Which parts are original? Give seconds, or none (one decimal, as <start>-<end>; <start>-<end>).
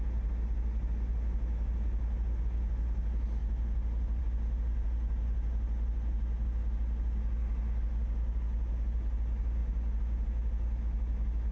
0.0-11.5